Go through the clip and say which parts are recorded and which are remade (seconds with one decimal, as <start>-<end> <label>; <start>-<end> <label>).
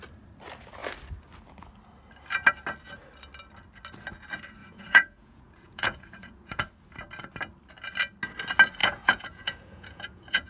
0.0-4.6 recorded; 4.6-6.6 remade; 6.6-8.8 recorded; 8.8-10.5 remade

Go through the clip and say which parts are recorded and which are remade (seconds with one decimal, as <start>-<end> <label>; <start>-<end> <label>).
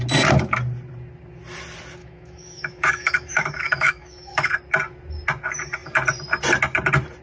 0.0-2.0 recorded; 2.0-4.5 remade; 4.5-7.2 recorded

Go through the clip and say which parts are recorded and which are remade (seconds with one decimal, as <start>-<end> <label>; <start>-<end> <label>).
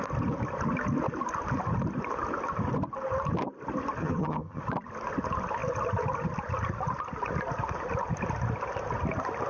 0.0-4.0 recorded; 4.0-4.6 remade; 4.6-9.5 recorded